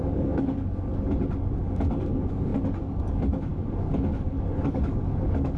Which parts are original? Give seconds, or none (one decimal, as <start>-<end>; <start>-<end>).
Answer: 0.9-1.6